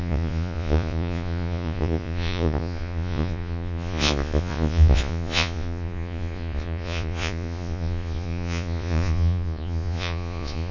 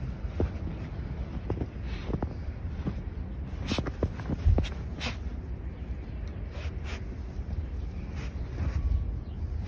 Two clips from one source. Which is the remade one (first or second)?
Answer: first